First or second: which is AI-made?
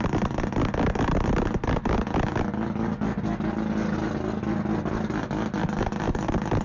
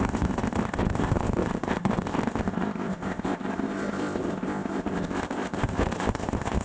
second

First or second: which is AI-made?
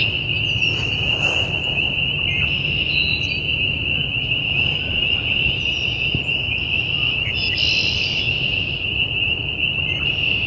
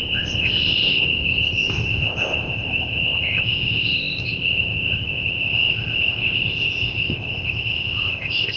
second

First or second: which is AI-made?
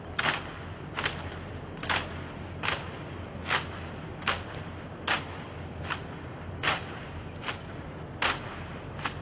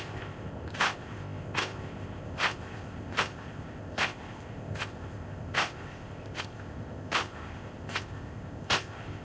second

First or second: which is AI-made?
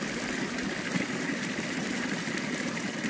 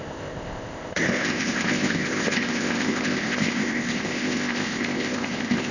second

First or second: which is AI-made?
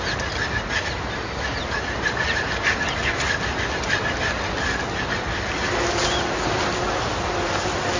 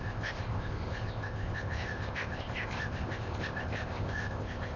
second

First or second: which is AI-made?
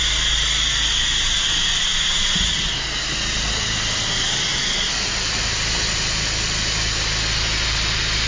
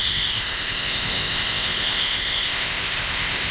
second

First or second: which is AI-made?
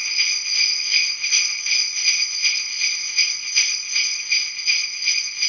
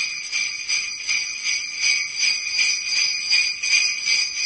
first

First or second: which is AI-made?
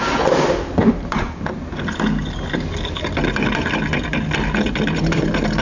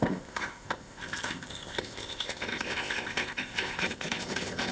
second